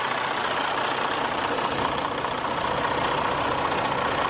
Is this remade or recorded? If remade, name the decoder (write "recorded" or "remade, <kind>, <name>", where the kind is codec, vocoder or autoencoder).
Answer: recorded